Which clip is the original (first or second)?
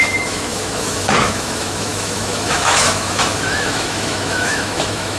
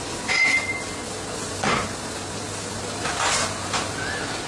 second